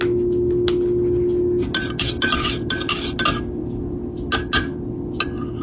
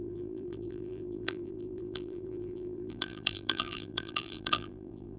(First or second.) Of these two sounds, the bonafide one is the first